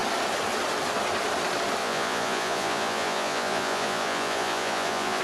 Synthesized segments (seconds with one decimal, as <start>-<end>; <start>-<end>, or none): 1.8-5.2